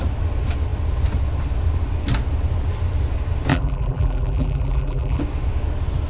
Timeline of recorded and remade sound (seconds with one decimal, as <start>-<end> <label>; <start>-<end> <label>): 0.0-3.5 recorded; 3.5-5.2 remade; 5.2-6.1 recorded